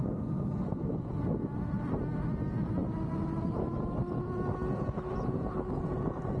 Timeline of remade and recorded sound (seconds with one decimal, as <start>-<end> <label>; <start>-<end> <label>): 0.0-6.4 recorded